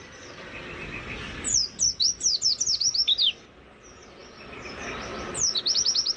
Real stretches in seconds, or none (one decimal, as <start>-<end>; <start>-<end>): 0.0-6.2